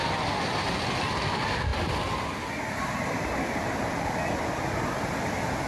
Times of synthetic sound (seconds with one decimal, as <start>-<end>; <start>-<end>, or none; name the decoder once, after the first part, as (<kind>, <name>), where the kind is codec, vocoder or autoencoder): none